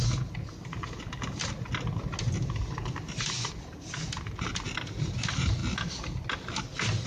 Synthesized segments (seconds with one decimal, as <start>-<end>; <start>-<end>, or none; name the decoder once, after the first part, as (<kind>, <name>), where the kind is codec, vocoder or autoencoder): none